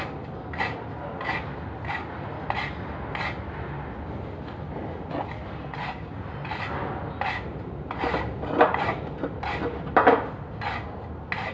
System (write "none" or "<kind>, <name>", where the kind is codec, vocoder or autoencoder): none